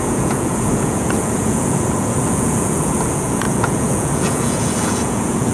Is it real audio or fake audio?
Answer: fake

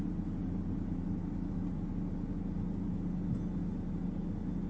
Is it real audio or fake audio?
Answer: real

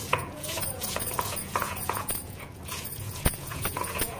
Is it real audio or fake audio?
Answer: fake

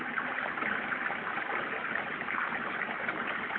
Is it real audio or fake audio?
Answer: real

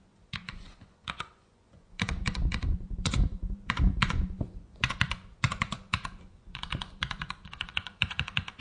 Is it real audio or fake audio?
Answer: fake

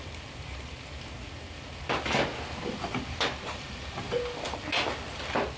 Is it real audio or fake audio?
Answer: real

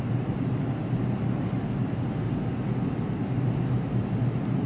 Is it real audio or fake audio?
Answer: real